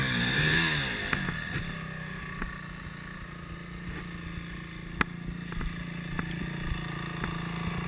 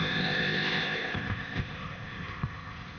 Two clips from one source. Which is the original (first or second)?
first